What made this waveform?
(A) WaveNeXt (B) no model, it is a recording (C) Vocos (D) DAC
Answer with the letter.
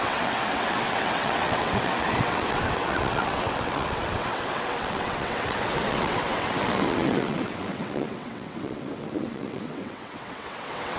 A